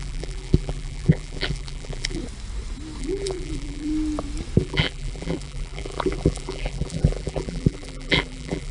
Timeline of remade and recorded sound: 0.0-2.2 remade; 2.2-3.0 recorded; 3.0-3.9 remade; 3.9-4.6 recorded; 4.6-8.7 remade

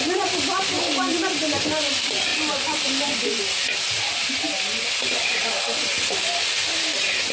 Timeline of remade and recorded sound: 0.0-7.3 recorded

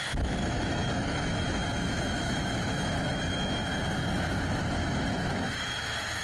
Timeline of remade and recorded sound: 0.0-3.7 remade; 3.7-4.6 recorded; 4.6-6.2 remade

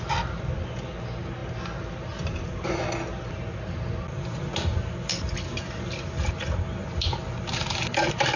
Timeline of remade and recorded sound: 0.0-8.4 recorded

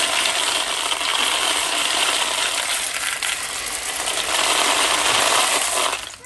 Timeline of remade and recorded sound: 0.0-1.1 recorded; 1.1-4.9 remade; 4.9-6.3 recorded